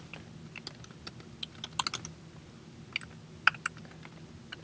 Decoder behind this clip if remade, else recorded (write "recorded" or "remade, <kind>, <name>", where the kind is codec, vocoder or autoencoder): recorded